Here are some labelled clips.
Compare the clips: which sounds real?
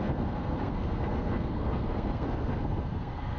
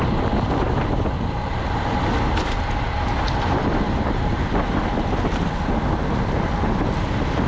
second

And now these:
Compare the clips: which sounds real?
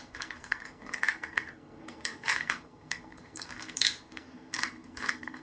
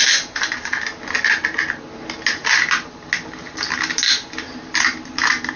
second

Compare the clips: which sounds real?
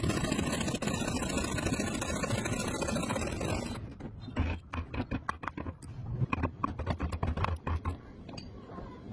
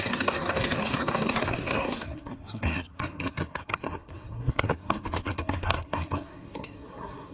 first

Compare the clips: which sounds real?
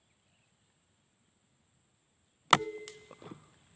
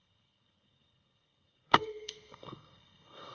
first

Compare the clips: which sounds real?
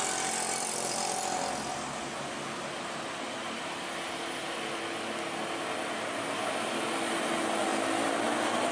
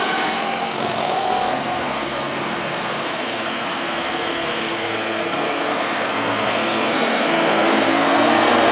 first